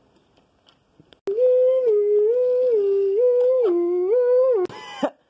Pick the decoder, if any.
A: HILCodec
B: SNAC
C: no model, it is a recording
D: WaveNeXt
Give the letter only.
C